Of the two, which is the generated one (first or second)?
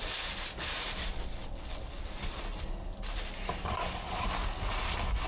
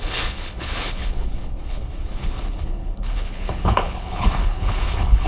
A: second